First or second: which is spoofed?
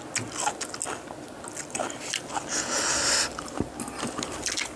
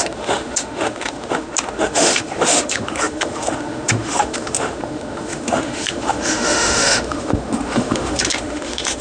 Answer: second